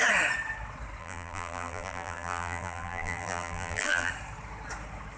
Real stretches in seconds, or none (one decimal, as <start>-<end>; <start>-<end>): 0.0-1.0; 4.1-5.2